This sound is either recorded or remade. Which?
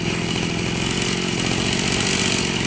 recorded